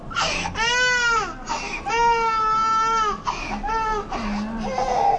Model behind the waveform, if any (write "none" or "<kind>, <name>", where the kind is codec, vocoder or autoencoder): none